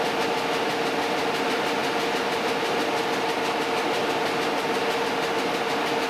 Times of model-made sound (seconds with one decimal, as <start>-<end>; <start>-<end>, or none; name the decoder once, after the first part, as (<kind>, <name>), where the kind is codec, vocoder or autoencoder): none